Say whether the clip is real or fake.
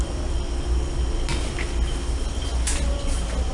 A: real